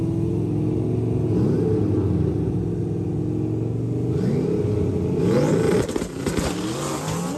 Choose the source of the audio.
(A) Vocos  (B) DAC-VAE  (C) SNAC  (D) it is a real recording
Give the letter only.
D